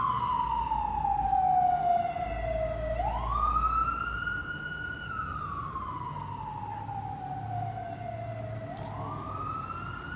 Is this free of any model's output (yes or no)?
yes